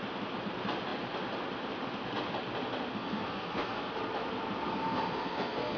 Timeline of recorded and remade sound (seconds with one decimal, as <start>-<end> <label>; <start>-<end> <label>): 0.0-2.9 recorded; 2.9-3.9 remade; 3.9-4.7 recorded; 4.7-5.8 remade